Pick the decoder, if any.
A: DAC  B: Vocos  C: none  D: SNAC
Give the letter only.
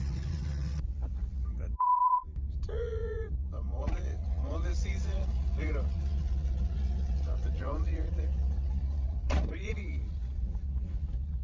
B